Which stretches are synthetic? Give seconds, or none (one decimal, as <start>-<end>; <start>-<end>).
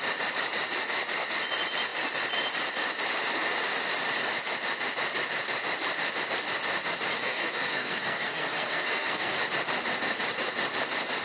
7.1-9.4